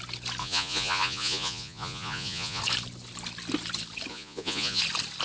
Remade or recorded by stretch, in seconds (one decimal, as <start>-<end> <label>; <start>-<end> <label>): 0.0-0.4 recorded; 0.4-2.6 remade; 2.6-4.1 recorded; 4.1-4.8 remade; 4.8-5.2 recorded